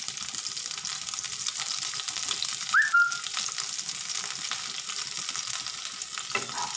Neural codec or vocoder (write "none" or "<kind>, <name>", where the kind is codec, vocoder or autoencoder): none